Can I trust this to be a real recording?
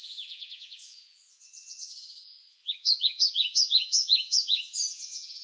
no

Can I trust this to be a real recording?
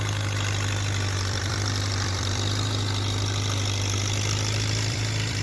no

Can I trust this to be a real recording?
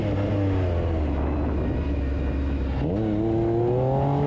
yes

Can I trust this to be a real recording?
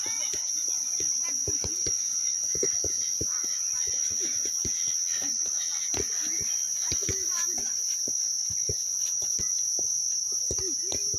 yes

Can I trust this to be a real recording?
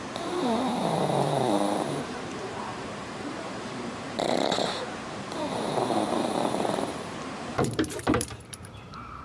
no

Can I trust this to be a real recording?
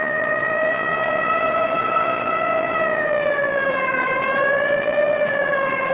no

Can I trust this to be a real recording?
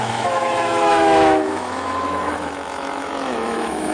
no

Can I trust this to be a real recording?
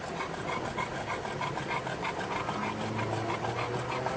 yes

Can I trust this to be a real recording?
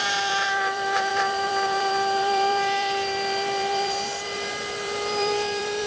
no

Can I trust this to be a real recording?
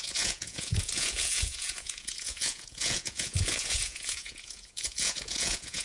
no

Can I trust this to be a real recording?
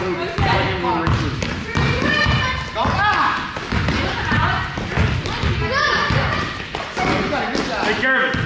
yes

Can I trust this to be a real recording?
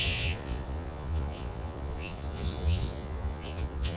no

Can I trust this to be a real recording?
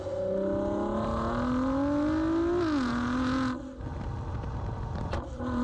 yes